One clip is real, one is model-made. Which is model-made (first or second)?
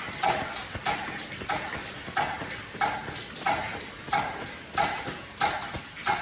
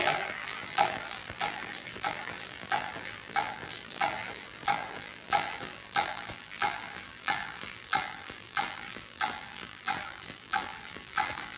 second